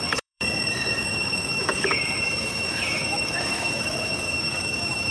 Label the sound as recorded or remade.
remade